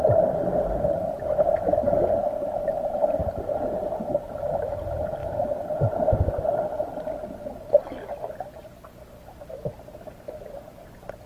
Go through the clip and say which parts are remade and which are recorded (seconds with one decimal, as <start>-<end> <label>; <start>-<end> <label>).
0.0-3.2 recorded; 3.2-4.4 remade; 4.4-11.3 recorded